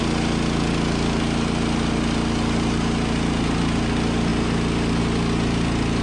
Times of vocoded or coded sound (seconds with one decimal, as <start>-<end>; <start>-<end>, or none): none